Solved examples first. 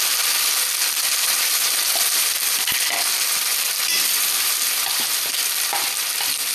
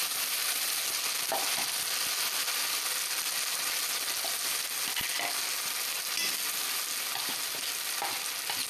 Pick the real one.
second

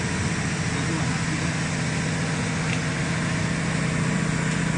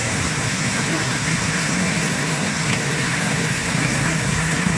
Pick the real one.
first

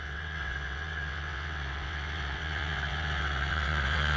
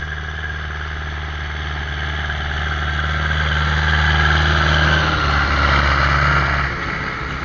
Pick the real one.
second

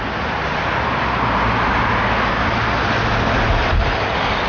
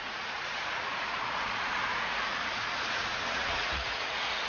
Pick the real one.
first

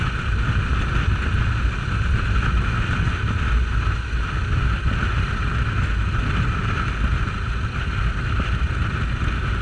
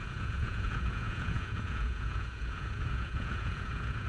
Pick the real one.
first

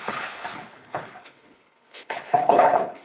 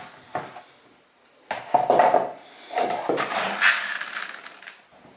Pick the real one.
second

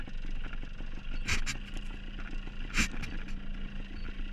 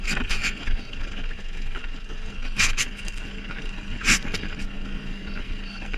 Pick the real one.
first